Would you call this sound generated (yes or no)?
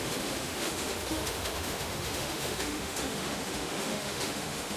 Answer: yes